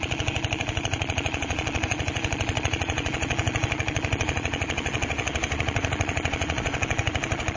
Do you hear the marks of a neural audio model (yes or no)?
yes